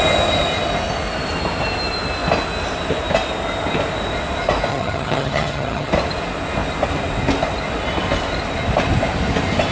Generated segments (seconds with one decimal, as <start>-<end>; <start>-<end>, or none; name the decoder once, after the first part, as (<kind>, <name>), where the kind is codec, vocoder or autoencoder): 4.7-5.9 (vocoder, HiFi-GAN)